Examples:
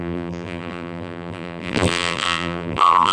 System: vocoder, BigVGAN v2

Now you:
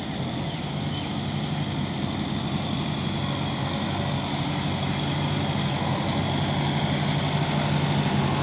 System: none